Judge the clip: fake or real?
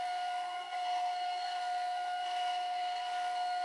fake